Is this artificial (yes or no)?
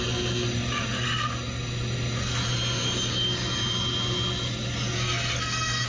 no